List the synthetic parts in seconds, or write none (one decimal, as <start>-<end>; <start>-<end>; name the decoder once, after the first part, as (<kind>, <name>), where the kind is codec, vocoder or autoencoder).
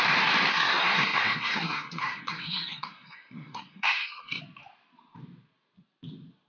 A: 0.5-4.4 (codec, SNAC)